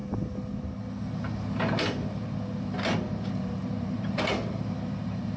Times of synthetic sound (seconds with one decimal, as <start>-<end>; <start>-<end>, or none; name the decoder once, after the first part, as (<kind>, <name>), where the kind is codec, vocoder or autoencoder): 3.2-5.4 (vocoder, BigVGAN v2)